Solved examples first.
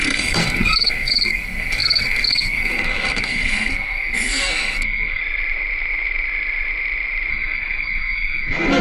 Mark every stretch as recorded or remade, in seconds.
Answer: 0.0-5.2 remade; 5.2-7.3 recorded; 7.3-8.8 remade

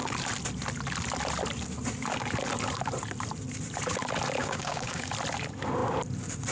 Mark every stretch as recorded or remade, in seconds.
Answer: 0.0-4.4 recorded; 4.4-5.1 remade; 5.1-6.5 recorded

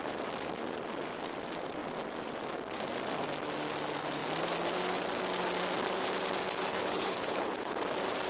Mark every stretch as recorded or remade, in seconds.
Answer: 0.0-6.7 recorded; 6.7-7.7 remade; 7.7-8.3 recorded

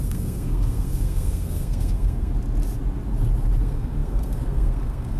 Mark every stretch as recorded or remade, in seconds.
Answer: 0.0-2.3 remade; 2.3-3.6 recorded; 3.6-5.2 remade

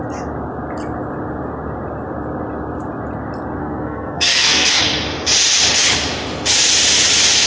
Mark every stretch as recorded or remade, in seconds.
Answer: 0.0-3.6 recorded; 3.6-4.8 remade; 4.8-7.5 recorded

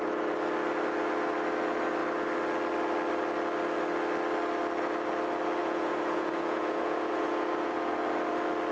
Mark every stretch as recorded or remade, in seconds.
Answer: 0.0-5.6 recorded; 5.6-7.9 remade; 7.9-8.7 recorded

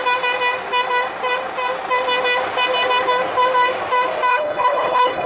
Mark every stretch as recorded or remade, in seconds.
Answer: 0.0-4.3 recorded; 4.3-5.3 remade

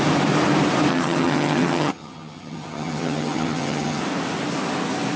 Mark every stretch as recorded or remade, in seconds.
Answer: 0.0-0.9 recorded; 0.9-4.0 remade; 4.0-5.2 recorded